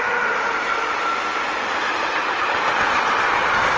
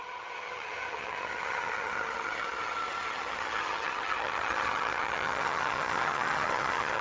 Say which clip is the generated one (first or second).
second